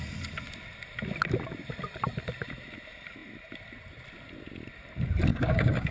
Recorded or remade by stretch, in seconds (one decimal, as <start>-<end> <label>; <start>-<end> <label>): 0.0-5.3 recorded; 5.3-5.9 remade